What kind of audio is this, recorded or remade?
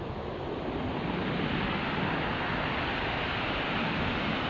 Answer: recorded